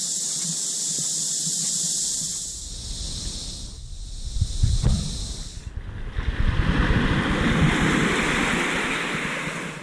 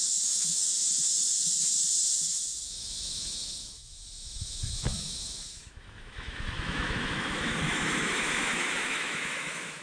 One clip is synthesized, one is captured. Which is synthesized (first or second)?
second